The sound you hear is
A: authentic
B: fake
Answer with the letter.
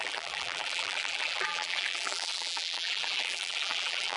B